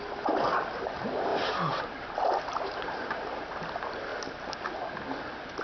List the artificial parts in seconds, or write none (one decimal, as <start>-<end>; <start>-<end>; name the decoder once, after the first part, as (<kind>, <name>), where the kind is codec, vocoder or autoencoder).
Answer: none